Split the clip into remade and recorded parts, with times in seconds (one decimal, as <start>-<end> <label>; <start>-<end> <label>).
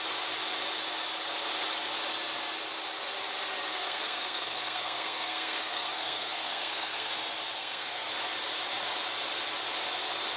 0.0-3.7 recorded; 3.7-7.1 remade; 7.1-7.6 recorded; 7.6-8.1 remade; 8.1-10.4 recorded